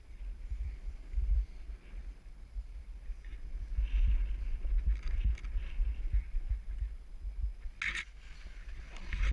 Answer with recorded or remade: recorded